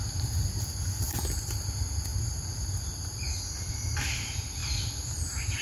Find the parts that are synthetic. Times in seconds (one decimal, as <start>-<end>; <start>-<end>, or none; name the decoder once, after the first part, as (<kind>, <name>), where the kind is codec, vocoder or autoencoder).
none